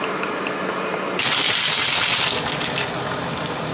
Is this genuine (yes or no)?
yes